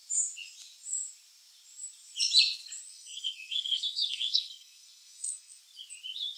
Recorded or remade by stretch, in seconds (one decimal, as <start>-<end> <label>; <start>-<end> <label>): 0.0-2.9 recorded; 2.9-5.6 remade; 5.6-6.4 recorded